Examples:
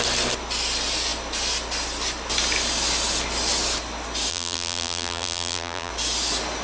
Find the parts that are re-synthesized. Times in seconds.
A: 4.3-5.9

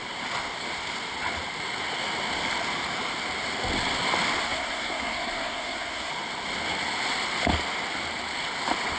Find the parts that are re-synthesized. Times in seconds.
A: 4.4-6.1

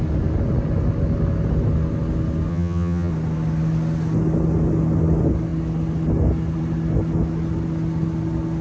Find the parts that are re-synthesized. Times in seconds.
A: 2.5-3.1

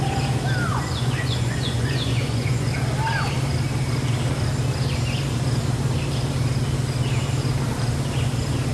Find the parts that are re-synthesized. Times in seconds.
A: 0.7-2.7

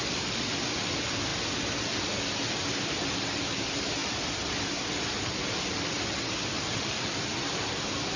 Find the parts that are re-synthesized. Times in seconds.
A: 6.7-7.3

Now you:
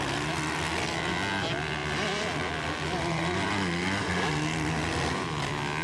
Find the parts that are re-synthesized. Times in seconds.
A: 1.8-4.3

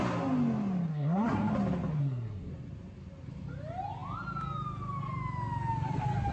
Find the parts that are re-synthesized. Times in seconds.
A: 0.9-1.5; 2.0-2.5

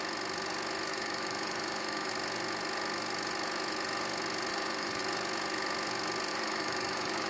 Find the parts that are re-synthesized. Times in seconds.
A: 0.9-2.1; 4.5-5.0; 6.3-7.3